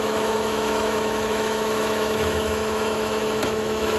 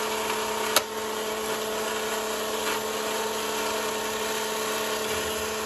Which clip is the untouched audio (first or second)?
second